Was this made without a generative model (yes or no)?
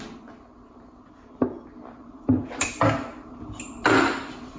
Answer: yes